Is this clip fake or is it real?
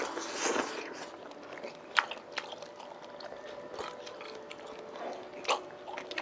real